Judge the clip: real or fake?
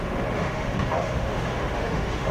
fake